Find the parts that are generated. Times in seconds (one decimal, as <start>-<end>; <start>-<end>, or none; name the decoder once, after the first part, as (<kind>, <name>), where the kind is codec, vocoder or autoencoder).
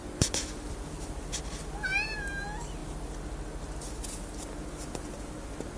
0.0-1.6 (vocoder, BigVGAN v2); 2.8-5.2